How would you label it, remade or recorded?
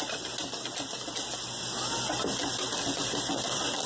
recorded